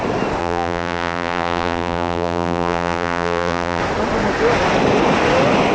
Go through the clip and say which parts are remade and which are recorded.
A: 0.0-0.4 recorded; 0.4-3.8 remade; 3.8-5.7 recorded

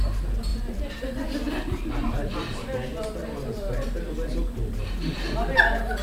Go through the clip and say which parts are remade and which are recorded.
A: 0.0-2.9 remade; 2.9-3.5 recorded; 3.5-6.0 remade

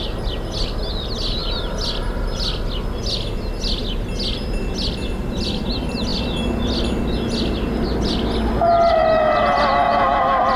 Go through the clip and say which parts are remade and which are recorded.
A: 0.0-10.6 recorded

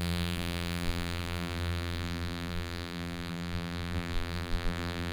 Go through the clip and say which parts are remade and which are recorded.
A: 0.0-5.1 remade